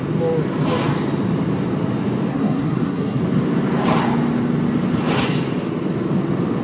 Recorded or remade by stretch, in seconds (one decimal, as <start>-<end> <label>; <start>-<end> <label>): 0.0-2.3 recorded; 2.3-3.2 remade; 3.2-6.6 recorded